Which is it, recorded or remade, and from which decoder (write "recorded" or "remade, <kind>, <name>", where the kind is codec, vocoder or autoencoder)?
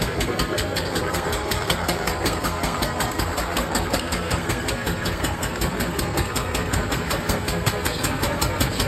remade, codec, SNAC